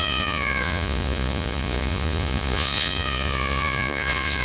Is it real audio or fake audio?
fake